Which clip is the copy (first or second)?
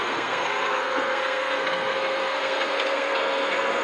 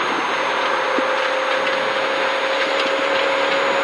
first